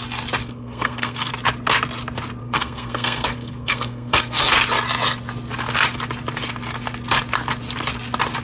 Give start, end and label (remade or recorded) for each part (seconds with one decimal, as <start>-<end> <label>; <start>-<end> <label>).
0.0-0.4 recorded; 0.4-1.3 remade; 1.3-2.4 recorded; 2.4-4.4 remade; 4.4-8.4 recorded